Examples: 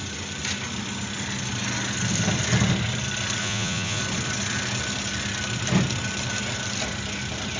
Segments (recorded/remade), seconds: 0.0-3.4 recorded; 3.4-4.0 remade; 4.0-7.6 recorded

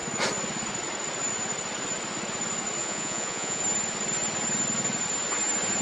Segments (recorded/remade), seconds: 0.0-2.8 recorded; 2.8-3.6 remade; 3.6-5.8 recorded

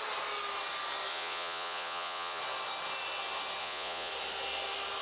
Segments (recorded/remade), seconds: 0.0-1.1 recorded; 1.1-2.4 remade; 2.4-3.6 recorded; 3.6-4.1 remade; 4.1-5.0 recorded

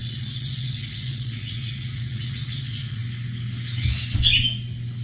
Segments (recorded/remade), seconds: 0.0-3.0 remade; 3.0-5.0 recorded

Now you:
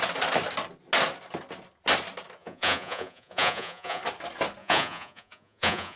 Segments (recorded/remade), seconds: 0.0-2.4 recorded; 2.4-4.0 remade; 4.0-4.6 recorded; 4.6-6.0 remade

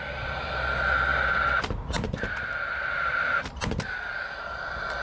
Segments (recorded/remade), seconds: 0.0-5.0 recorded

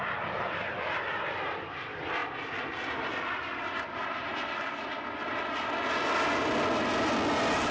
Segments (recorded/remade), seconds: 0.0-7.7 recorded